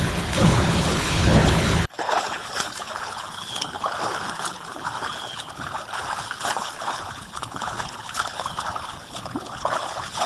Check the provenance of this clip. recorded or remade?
remade